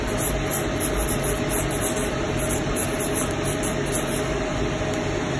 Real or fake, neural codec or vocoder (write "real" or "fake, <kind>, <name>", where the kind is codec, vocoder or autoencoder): real